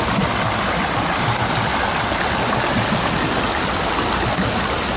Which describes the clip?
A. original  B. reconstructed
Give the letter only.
A